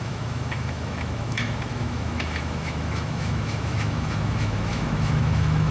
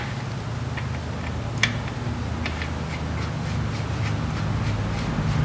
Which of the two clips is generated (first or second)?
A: first